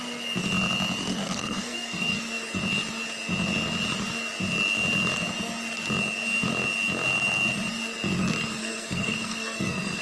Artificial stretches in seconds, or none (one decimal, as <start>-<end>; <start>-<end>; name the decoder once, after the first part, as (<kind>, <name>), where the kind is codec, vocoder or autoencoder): 1.1-2.2 (codec, SNAC); 8.6-10.0